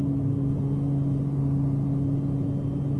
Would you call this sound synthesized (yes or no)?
no